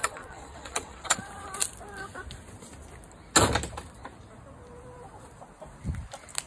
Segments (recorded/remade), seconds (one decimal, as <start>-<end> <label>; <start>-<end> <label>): 0.0-1.2 remade; 1.2-6.5 recorded